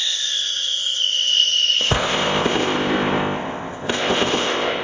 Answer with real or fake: fake